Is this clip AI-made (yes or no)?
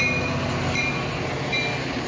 no